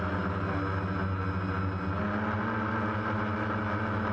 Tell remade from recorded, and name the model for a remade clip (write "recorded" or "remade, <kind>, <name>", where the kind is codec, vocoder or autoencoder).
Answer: recorded